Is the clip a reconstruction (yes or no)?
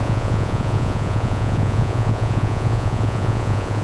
yes